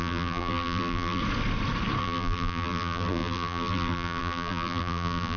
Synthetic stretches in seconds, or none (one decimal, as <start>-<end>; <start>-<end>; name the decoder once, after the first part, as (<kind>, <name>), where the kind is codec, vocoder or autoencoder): 0.0-1.2 (vocoder, BigVGAN v2); 2.0-5.4